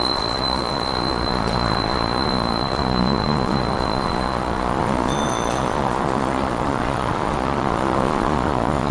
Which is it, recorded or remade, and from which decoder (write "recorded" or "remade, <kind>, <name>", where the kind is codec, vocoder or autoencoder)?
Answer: remade, vocoder, Vocos